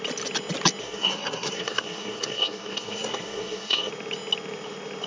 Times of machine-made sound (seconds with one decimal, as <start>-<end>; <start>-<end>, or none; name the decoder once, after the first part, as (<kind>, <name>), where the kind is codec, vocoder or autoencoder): 0.8-3.9 (codec, SNAC)